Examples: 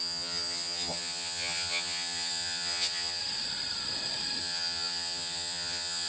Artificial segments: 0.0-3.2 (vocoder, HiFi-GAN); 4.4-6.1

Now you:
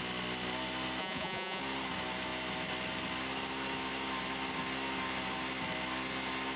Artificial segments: 1.0-1.6 (vocoder, Vocos)

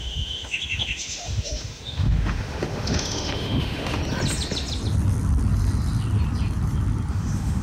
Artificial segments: 0.0-4.0 (autoencoder, DAC-VAE); 7.1-7.6

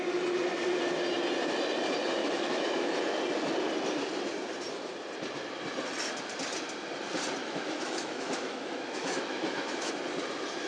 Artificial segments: 2.2-3.0 (autoencoder, DAC-VAE); 7.4-9.9

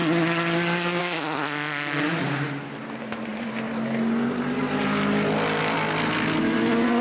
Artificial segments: none

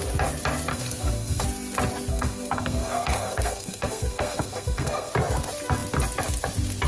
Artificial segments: 0.7-1.4 (codec, SNAC); 2.1-5.1

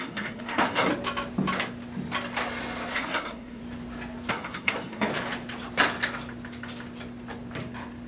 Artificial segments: 0.0-0.9 (codec, SNAC); 2.9-3.6; 4.3-5.1